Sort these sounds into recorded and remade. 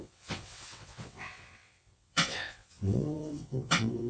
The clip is remade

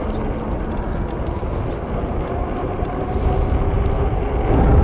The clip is recorded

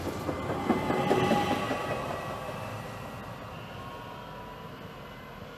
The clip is recorded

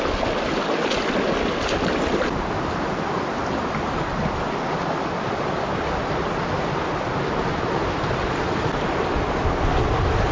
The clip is recorded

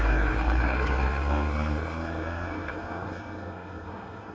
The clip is remade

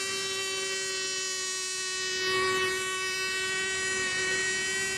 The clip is recorded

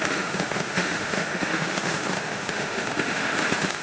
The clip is remade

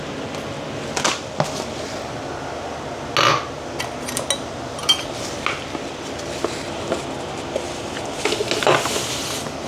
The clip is recorded